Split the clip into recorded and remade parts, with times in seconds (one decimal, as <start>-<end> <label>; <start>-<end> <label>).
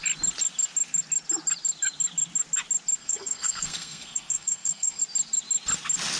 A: 0.0-3.0 recorded; 3.0-5.0 remade; 5.0-6.2 recorded